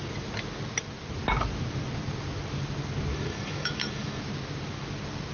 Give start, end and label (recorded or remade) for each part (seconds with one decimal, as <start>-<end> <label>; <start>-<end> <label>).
0.0-3.1 recorded; 3.1-4.2 remade; 4.2-5.3 recorded